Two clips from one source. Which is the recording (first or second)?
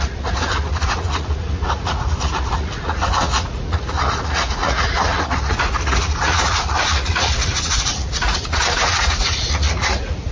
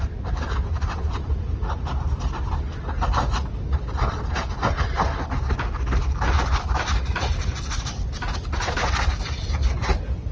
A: second